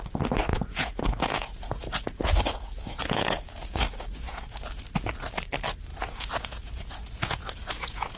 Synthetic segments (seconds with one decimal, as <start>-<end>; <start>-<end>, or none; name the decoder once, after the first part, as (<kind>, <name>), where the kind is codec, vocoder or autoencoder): 0.5-4.8 (vocoder, Vocos); 5.9-8.2